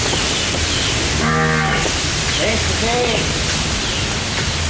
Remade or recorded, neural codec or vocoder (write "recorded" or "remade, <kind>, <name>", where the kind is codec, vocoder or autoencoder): recorded